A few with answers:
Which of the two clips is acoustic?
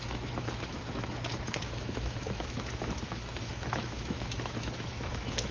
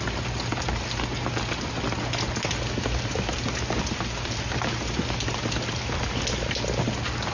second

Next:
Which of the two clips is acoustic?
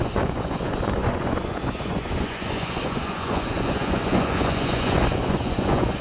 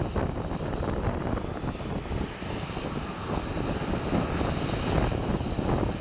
second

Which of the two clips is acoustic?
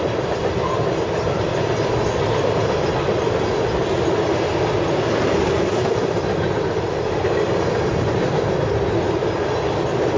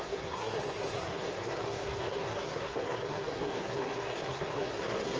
first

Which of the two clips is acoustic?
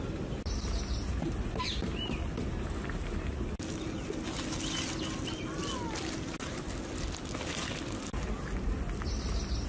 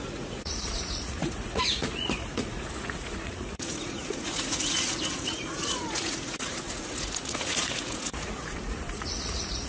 first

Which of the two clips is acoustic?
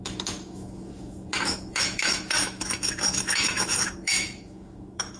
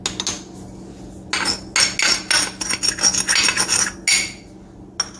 second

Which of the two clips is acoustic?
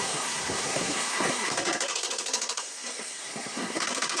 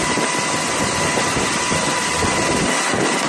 second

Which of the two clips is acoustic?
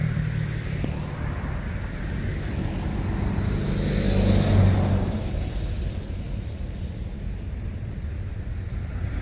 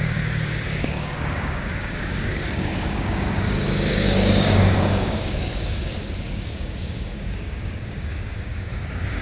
first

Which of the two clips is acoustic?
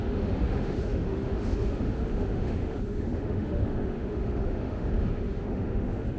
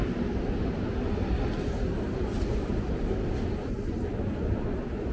second